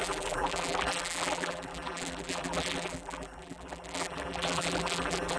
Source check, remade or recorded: remade